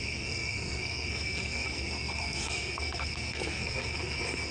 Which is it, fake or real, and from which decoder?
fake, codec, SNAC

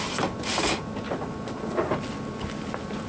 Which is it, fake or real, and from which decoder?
real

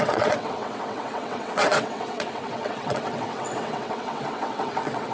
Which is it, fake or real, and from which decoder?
fake, vocoder, WaveNeXt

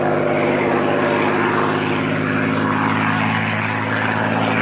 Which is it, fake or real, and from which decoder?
real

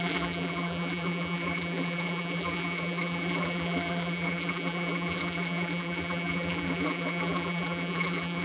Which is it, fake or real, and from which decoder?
fake, vocoder, BigVGAN v2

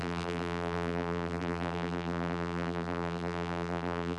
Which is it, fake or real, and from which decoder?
fake, vocoder, BigVGAN v2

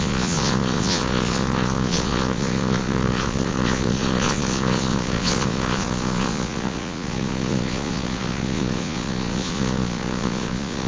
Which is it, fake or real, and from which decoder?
fake, vocoder, Vocos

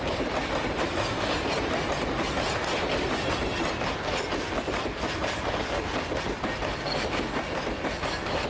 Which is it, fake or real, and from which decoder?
real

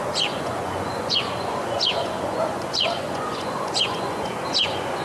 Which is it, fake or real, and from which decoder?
fake, vocoder, Vocos